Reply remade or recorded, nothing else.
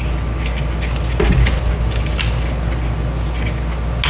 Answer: recorded